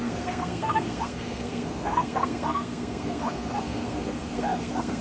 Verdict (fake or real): fake